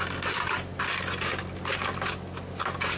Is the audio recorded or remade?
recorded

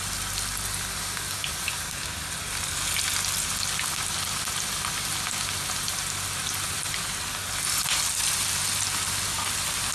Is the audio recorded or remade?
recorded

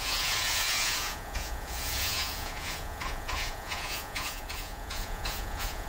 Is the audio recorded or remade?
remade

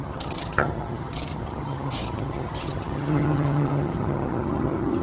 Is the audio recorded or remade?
remade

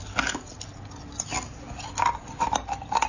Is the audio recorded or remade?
recorded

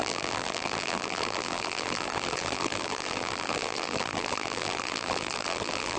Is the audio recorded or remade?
remade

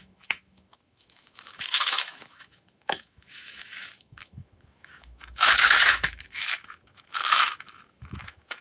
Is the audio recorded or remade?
remade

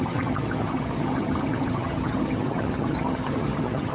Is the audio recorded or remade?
remade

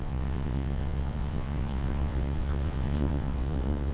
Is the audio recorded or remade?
remade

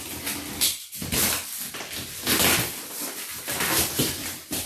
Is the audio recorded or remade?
recorded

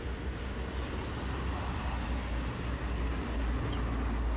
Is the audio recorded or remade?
recorded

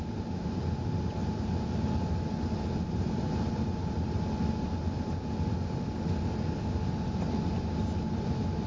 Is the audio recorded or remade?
recorded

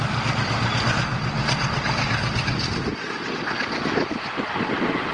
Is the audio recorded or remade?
recorded